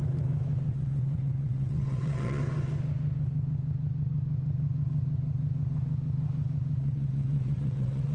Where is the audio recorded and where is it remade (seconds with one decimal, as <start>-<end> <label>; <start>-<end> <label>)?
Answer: 0.0-0.7 recorded; 0.7-2.4 remade; 2.4-6.8 recorded; 6.8-8.1 remade